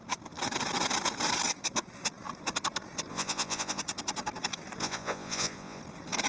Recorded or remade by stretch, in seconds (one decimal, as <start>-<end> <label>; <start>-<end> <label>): 0.0-3.1 recorded; 3.1-3.8 remade; 3.8-4.8 recorded; 4.8-5.8 remade; 5.8-6.3 recorded